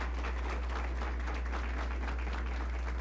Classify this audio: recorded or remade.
recorded